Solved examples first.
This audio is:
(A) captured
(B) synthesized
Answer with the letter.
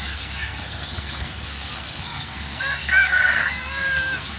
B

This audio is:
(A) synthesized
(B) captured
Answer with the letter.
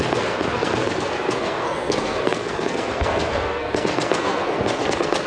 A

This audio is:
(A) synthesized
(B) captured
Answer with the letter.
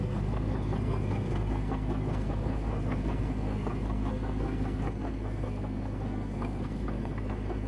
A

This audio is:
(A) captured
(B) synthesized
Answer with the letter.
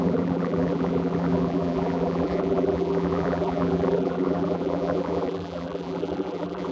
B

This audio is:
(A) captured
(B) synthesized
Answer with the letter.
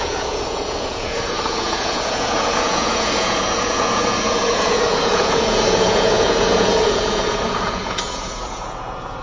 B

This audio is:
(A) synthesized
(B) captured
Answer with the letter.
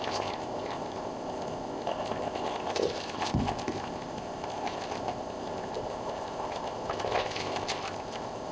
A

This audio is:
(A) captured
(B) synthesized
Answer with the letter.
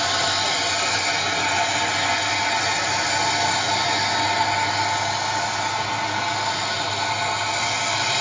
A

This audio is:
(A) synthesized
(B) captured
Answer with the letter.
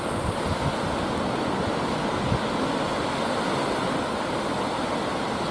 B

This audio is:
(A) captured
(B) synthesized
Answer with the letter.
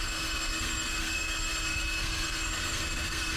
B